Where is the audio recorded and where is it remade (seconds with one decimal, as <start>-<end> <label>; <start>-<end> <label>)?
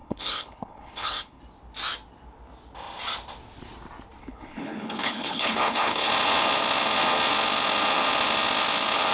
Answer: 0.0-1.4 remade; 1.4-4.2 recorded; 4.2-6.1 remade; 6.1-9.1 recorded